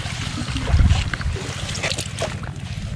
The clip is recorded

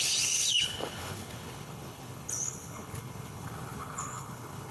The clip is remade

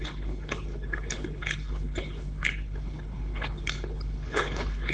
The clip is remade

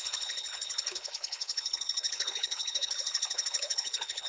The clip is remade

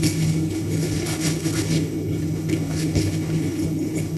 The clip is remade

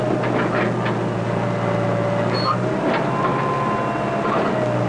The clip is recorded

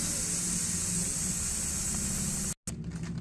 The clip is recorded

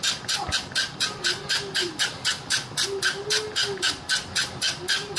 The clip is recorded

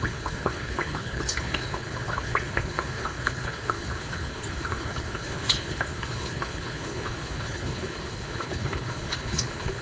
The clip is remade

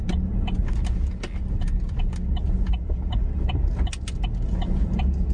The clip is recorded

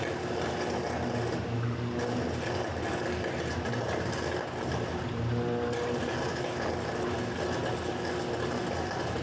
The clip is recorded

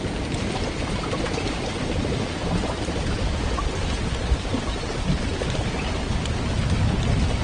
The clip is recorded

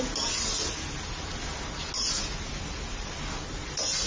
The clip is recorded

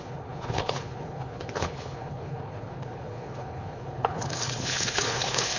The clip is remade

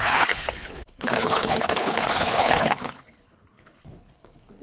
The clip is remade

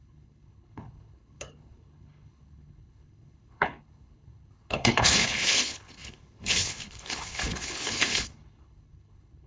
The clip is remade